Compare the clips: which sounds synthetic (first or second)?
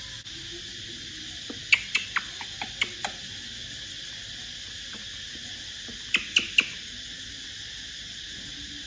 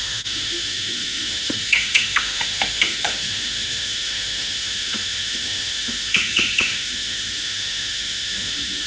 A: second